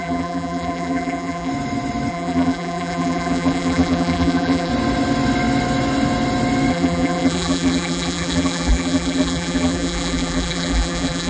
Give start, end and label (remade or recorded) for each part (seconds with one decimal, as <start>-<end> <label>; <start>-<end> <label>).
0.0-1.5 remade; 1.5-2.1 recorded; 2.1-4.7 remade; 4.7-6.7 recorded; 6.7-11.3 remade